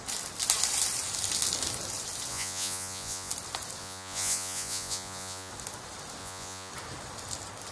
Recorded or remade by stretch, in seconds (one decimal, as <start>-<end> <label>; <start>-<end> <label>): 0.0-2.3 recorded; 2.3-3.3 remade; 3.3-3.8 recorded; 3.8-5.5 remade; 5.5-6.2 recorded; 6.2-6.7 remade; 6.7-7.7 recorded